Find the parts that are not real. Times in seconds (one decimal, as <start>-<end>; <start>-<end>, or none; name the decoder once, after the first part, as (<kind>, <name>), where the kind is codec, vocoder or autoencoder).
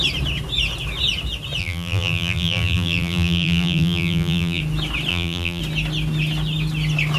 1.6-4.6 (vocoder, BigVGAN v2); 5.1-5.6